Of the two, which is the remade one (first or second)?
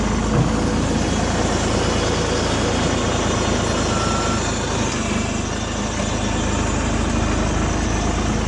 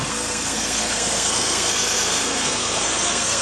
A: second